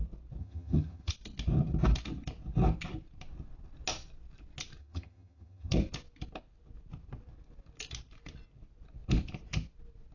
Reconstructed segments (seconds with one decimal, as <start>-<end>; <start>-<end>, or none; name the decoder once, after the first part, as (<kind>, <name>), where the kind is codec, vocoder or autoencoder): 0.4-1.1 (vocoder, HiFi-GAN); 4.8-5.7